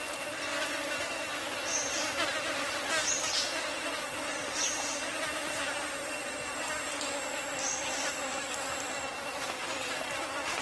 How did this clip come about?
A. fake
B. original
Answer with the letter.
B